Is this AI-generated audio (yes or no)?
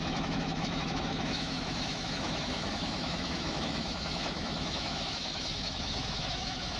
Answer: yes